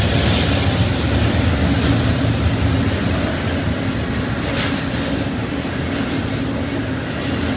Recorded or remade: recorded